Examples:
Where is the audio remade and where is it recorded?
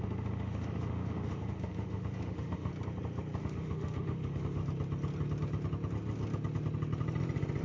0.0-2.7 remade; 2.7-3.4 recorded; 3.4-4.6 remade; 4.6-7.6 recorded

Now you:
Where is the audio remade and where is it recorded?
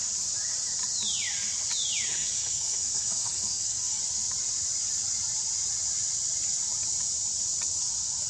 0.0-2.1 recorded; 2.1-4.0 remade; 4.0-8.3 recorded